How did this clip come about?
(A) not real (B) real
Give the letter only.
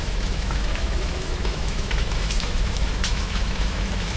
A